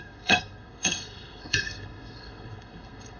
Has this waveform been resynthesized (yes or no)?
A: yes